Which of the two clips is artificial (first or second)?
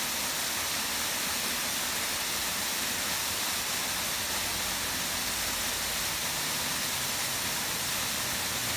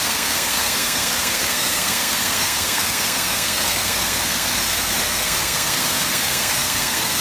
second